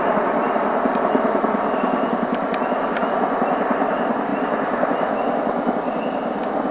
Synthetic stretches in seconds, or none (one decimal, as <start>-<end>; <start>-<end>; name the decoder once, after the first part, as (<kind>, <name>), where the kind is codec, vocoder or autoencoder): none